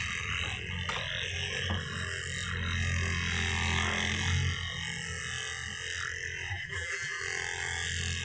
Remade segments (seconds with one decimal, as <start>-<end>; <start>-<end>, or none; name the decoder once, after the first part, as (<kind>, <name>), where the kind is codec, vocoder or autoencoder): 6.5-7.2 (vocoder, BigVGAN v2)